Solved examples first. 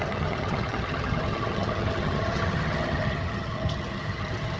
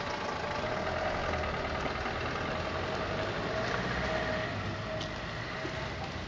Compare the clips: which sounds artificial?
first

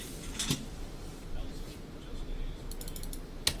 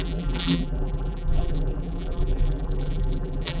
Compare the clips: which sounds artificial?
second